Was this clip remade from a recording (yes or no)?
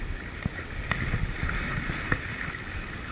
no